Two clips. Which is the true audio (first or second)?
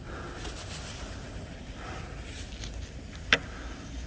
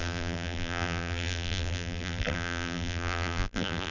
first